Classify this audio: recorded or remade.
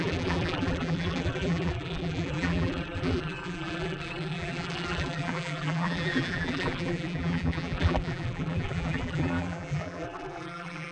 remade